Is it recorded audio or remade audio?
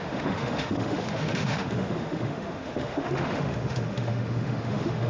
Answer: remade